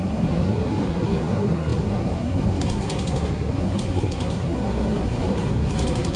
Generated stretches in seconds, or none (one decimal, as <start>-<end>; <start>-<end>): 0.0-6.2